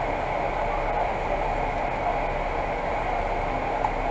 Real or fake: real